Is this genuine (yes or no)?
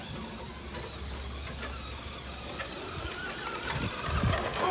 yes